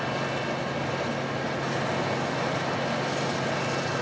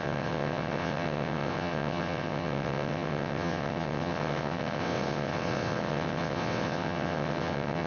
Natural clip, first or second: first